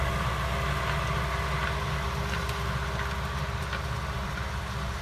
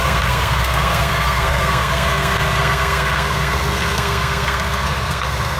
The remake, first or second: second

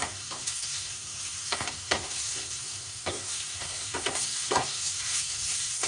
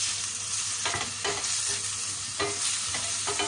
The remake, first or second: first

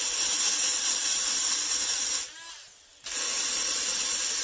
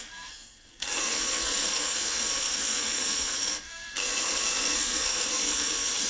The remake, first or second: second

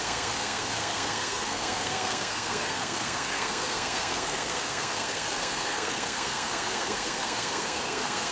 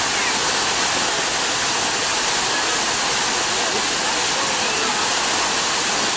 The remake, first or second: first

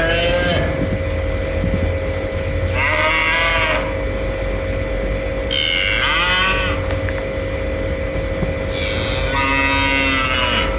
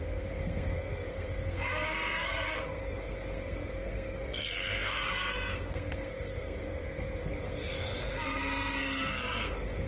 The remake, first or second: second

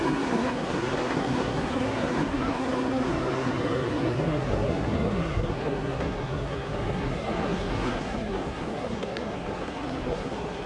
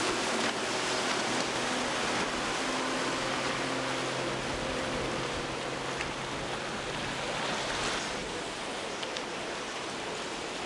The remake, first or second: first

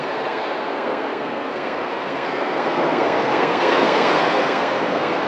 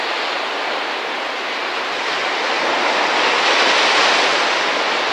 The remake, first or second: first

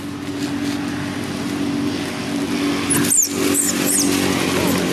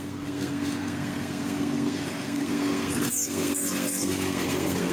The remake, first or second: second